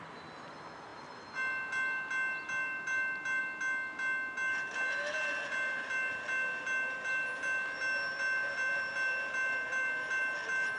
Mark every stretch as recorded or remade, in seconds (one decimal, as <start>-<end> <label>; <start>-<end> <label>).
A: 0.0-10.8 recorded